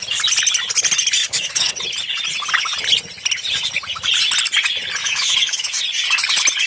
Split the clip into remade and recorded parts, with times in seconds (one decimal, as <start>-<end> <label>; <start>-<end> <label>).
0.0-1.2 recorded; 1.2-1.7 remade; 1.7-5.0 recorded; 5.0-5.8 remade; 5.8-6.7 recorded